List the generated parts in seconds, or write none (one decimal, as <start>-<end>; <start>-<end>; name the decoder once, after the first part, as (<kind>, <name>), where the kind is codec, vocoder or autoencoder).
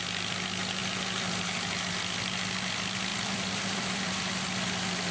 3.1-4.2 (vocoder, BigVGAN v2)